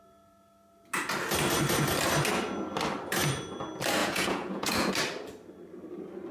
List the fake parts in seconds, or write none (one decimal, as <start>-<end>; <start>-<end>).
4.0-4.9

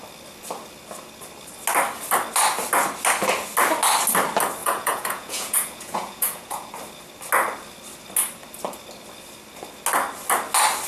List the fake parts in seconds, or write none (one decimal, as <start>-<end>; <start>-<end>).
4.6-6.7

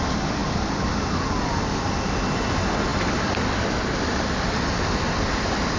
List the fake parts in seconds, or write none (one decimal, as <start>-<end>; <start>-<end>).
none

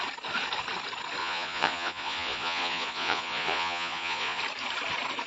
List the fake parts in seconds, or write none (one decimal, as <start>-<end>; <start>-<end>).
1.2-4.4

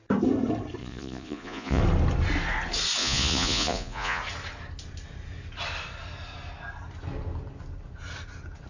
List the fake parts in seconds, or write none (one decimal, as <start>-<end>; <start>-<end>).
0.8-1.8; 3.0-4.2

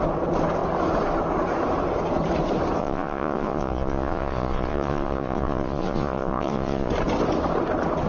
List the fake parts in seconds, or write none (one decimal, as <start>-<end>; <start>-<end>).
2.8-6.9

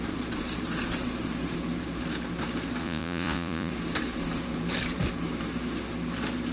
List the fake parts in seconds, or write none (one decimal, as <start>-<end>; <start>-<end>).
2.8-3.7